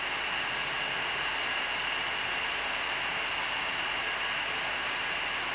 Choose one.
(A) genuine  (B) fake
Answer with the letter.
A